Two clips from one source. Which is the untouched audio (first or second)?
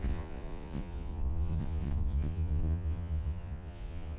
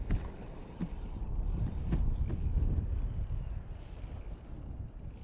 second